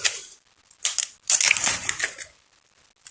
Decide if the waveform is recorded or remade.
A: recorded